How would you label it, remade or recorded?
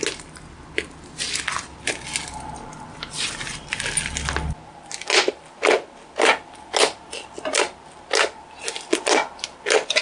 recorded